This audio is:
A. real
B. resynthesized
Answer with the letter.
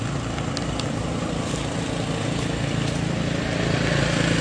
A